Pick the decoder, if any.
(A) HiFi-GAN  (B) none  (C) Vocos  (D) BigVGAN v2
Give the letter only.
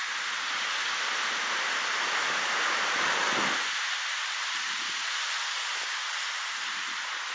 B